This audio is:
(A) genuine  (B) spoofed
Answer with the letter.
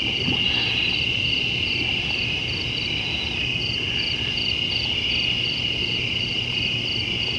A